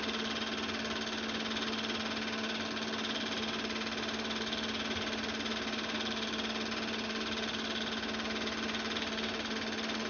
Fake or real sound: real